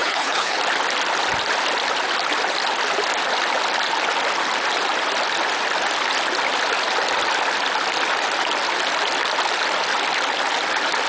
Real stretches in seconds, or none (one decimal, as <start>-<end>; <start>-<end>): 0.6-11.1